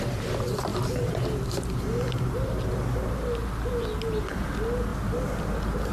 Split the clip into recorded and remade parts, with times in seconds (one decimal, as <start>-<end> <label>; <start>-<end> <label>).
0.0-5.9 recorded